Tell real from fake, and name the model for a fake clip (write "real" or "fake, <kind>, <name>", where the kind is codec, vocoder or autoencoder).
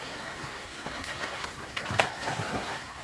fake, codec, SNAC